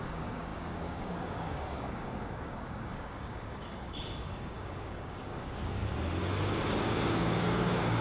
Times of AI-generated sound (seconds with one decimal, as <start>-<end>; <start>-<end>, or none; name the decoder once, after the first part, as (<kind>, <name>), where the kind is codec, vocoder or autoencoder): 0.0-5.8 (codec, DAC); 6.8-8.0